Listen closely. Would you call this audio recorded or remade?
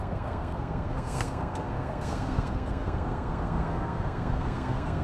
remade